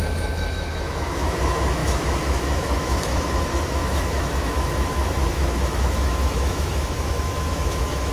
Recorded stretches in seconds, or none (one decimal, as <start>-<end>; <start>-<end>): none